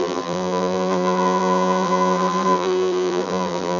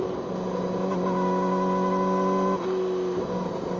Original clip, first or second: second